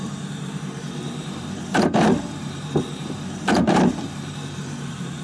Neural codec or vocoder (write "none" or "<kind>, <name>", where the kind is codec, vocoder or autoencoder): vocoder, BigVGAN v2